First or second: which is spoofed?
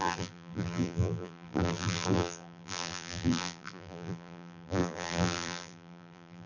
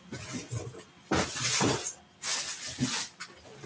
first